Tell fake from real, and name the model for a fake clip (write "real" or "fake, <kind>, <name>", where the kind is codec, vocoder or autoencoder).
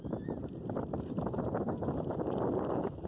real